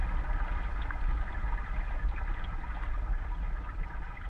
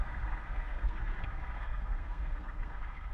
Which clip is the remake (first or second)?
second